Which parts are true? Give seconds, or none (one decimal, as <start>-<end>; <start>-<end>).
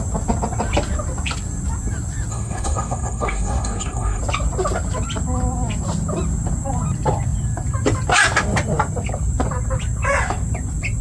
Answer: 0.0-2.3; 4.2-11.0